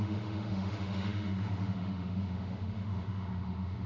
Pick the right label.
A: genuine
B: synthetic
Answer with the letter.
B